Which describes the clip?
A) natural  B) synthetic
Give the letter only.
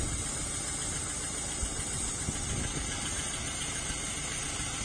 A